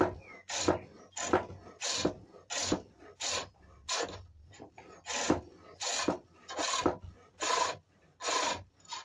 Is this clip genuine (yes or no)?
yes